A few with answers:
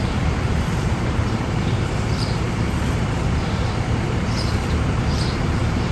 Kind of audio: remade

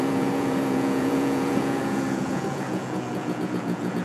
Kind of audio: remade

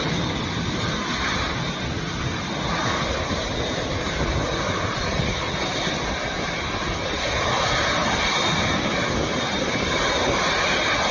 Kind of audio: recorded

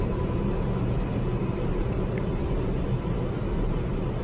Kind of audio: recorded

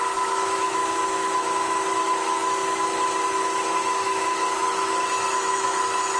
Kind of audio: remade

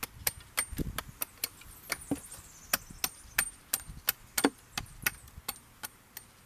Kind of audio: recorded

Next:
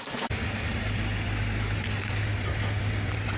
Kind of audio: recorded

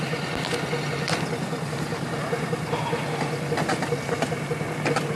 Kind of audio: recorded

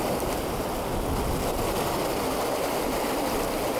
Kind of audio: recorded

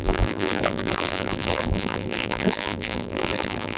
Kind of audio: remade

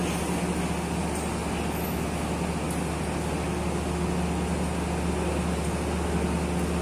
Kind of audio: recorded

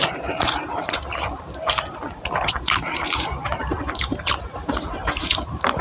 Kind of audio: remade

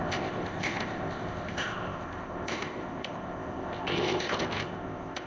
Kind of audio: remade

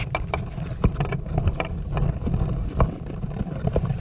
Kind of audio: recorded